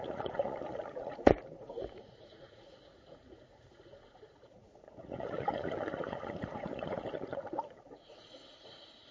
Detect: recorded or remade remade